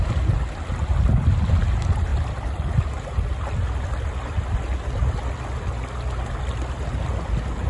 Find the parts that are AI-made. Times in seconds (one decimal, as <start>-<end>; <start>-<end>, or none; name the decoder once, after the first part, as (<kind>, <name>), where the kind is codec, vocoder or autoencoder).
none